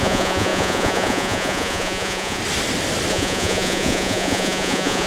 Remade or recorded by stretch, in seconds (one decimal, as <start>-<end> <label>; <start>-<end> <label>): 0.0-2.4 remade; 2.4-3.1 recorded; 3.1-5.1 remade